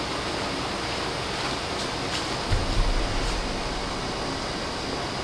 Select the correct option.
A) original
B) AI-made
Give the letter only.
A